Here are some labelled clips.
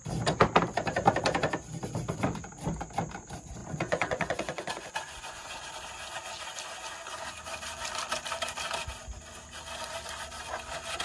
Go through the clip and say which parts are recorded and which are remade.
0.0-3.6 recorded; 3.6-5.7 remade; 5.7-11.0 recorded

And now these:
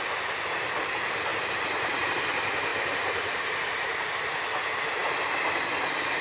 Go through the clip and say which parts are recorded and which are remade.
0.0-1.3 recorded; 1.3-2.2 remade; 2.2-2.7 recorded; 2.7-4.1 remade; 4.1-6.2 recorded

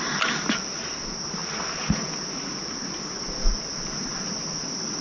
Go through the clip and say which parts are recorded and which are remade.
0.0-5.0 recorded

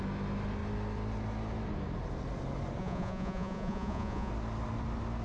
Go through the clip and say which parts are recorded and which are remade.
0.0-2.8 recorded; 2.8-4.3 remade; 4.3-5.2 recorded